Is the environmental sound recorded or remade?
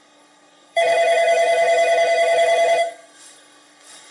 remade